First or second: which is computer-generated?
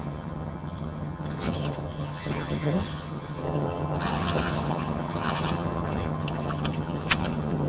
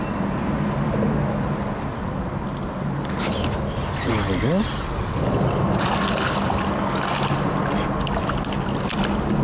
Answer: first